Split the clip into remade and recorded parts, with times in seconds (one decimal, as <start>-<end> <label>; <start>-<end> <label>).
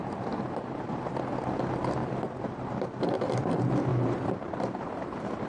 0.0-0.8 remade; 0.8-2.0 recorded; 2.0-3.2 remade; 3.2-3.9 recorded; 3.9-5.5 remade